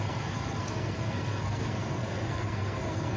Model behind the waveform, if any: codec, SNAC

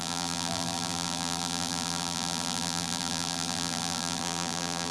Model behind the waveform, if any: vocoder, BigVGAN v2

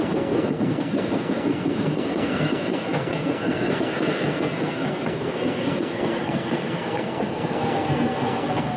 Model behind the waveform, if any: codec, SNAC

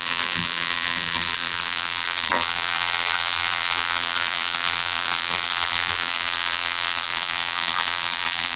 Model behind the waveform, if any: vocoder, BigVGAN v2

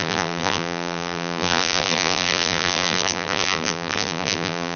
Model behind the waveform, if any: vocoder, BigVGAN v2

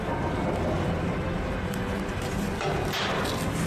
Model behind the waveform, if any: none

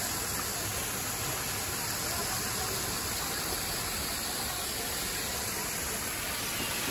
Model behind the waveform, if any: none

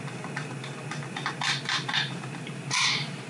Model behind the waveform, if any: none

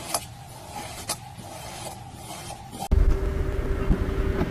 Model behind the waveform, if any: none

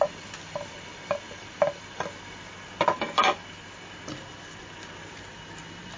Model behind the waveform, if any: none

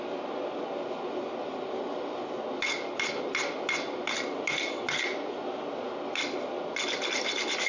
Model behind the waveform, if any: none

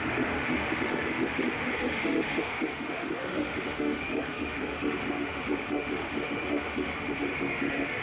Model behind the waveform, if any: autoencoder, DAC-VAE